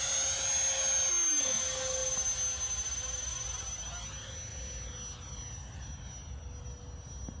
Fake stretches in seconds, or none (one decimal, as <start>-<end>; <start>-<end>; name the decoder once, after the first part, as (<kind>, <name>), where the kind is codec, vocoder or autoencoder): 1.1-1.6 (autoencoder, DAC-VAE)